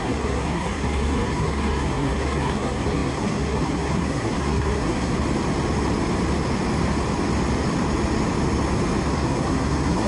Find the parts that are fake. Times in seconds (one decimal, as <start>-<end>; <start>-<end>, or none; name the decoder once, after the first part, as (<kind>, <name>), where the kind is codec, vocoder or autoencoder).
0.0-5.2 (codec, SNAC); 9.1-10.1